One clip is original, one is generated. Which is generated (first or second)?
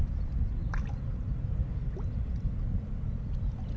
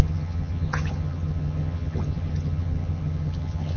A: second